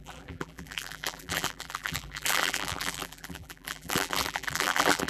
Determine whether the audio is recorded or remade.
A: remade